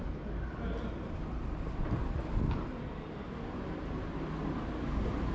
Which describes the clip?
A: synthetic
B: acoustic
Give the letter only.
B